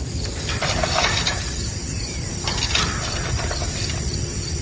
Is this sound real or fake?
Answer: fake